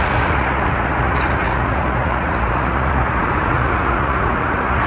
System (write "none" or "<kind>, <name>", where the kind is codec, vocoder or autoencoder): vocoder, Vocos